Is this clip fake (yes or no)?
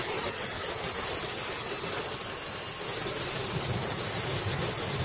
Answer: no